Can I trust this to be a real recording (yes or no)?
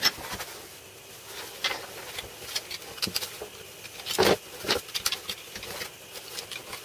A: yes